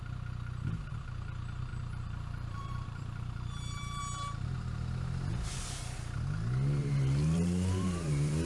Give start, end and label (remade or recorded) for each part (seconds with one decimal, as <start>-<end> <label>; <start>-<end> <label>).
0.0-1.7 recorded; 1.7-4.0 remade; 4.0-6.8 recorded; 6.8-8.5 remade